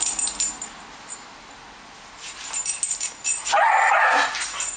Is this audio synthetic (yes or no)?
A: no